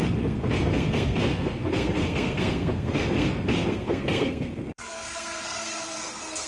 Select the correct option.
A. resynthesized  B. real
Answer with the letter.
A